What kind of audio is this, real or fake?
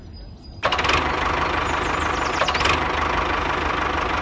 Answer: real